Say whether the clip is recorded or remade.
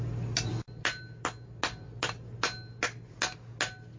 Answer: recorded